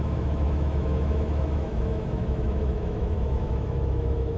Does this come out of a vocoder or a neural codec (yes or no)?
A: yes